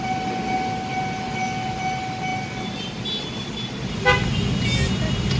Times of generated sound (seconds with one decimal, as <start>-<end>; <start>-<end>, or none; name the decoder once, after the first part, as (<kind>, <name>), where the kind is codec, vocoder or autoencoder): none